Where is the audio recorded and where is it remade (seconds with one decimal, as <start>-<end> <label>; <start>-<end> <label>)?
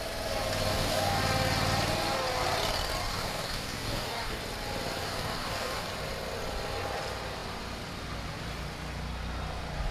0.0-0.7 recorded; 0.7-1.2 remade; 1.2-3.0 recorded; 3.0-4.4 remade; 4.4-5.0 recorded; 5.0-5.9 remade; 5.9-9.9 recorded